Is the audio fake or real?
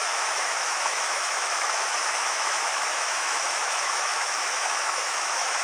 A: fake